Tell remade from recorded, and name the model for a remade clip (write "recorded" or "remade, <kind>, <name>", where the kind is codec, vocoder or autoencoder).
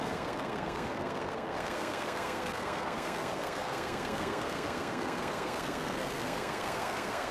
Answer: remade, codec, SNAC